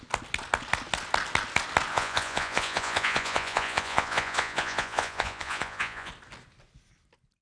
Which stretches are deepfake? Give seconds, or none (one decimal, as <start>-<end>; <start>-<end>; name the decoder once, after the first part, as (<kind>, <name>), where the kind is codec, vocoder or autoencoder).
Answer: 1.9-6.1 (vocoder, Vocos)